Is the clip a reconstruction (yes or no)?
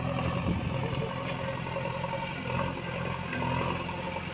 no